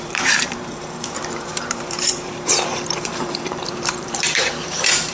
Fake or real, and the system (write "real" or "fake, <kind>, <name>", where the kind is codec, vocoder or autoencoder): fake, vocoder, BigVGAN v2